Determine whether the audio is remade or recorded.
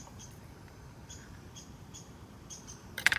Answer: remade